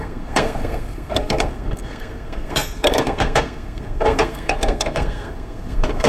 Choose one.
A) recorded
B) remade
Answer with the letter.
B